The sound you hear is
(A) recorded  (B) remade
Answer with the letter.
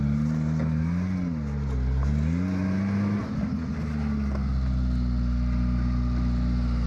A